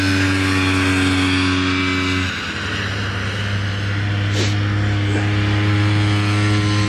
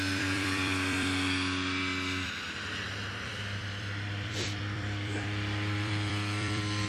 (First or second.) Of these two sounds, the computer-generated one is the second